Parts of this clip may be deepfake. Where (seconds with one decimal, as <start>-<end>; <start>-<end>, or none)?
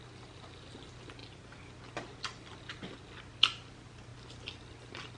0.0-1.2; 1.7-4.1